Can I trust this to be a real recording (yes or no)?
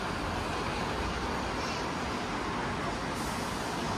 yes